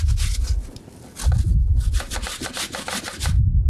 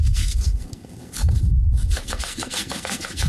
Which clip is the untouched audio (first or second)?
first